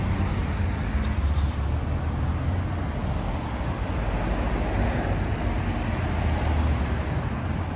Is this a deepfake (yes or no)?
no